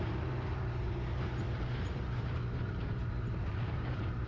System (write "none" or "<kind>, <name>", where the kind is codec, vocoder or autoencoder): vocoder, BigVGAN v2